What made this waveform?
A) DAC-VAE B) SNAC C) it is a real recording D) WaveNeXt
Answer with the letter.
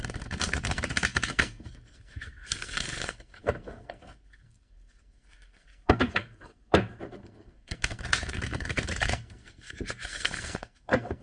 B